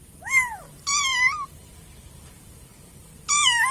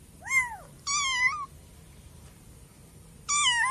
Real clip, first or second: second